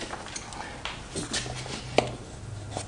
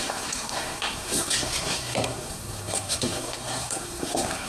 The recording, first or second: first